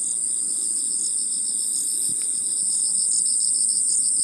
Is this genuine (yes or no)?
yes